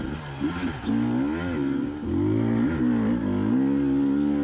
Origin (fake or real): real